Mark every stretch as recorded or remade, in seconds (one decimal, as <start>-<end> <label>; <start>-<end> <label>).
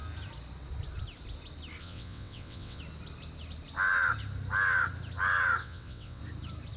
0.0-1.8 recorded; 1.8-2.8 remade; 2.8-5.6 recorded; 5.6-6.2 remade; 6.2-6.8 recorded